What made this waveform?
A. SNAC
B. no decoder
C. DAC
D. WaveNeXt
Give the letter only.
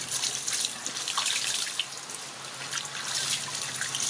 B